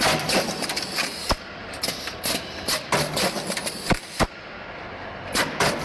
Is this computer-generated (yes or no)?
no